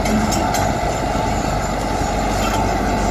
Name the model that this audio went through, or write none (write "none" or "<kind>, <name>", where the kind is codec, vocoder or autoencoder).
none